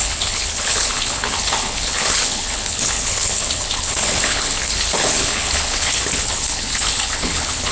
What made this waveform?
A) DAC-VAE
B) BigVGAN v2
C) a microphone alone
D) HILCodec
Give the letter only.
D